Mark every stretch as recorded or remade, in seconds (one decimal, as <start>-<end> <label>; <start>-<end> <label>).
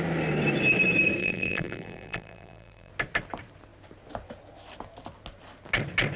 0.0-1.2 recorded; 1.2-2.9 remade; 2.9-6.2 recorded